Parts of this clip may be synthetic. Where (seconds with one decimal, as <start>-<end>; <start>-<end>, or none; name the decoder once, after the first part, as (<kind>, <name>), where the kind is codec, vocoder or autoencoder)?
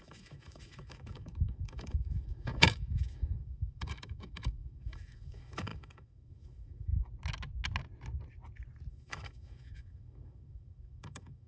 0.0-6.9 (autoencoder, DAC-VAE); 8.9-11.5